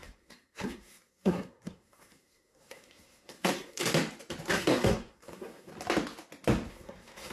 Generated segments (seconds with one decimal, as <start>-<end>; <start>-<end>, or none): 0.0-3.8; 4.5-5.7; 6.7-7.3